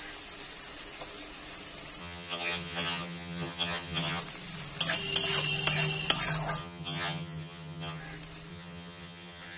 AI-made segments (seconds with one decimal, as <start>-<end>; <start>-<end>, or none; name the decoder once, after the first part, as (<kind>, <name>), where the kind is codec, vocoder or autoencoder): 2.0-4.2 (vocoder, HiFi-GAN); 6.6-8.0; 8.5-9.6